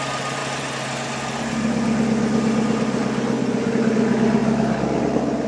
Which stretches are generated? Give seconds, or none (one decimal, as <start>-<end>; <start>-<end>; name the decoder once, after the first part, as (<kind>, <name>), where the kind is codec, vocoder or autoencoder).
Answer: none